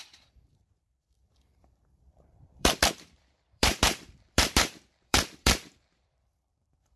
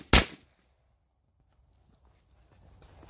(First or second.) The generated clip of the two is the first